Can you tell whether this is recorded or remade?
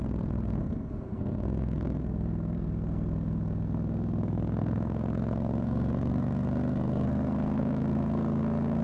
remade